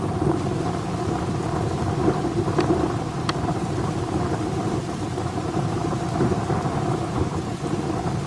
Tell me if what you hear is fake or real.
fake